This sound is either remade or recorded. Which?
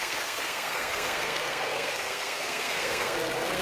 remade